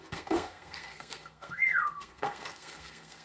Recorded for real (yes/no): no